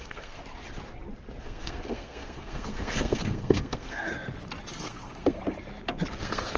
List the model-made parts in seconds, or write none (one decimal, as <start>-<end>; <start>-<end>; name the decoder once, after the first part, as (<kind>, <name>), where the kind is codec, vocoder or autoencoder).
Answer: 0.0-0.4 (codec, SNAC); 1.4-4.1; 4.7-5.4; 6.1-6.6